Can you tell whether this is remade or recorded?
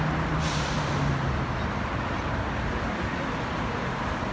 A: recorded